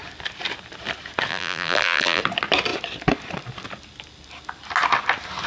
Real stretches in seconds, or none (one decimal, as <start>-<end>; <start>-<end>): 0.0-1.3; 2.2-5.5